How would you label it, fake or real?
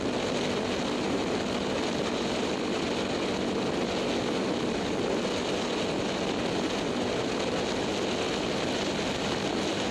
real